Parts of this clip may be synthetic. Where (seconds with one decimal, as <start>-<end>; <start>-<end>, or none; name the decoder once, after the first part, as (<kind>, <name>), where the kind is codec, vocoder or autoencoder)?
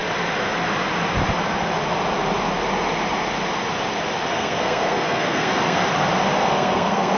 4.3-5.8 (codec, SNAC); 6.4-7.2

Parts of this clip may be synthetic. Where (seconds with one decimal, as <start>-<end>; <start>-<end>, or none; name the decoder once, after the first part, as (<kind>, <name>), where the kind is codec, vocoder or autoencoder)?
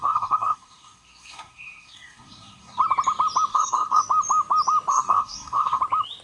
0.0-2.8 (codec, SNAC); 3.5-4.0; 4.9-5.8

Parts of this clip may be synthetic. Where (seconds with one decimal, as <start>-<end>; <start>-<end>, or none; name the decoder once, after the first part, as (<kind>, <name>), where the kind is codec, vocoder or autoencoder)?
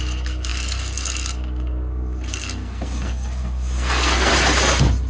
0.0-4.3 (codec, SNAC)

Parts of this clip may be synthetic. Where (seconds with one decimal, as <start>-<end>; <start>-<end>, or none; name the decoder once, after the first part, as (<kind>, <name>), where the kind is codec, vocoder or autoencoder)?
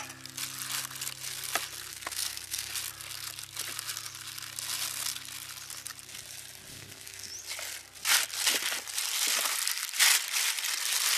1.9-2.7 (codec, SNAC); 6.7-7.3